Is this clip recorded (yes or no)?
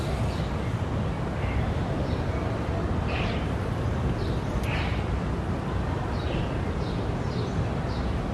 yes